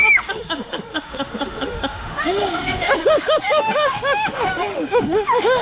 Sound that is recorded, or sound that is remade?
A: remade